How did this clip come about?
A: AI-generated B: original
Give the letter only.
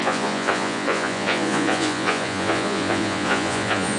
A